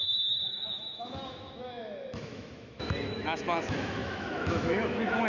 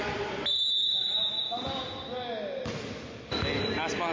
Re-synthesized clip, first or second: first